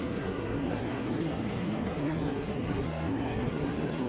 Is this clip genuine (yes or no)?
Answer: no